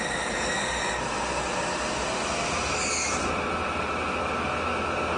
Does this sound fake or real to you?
real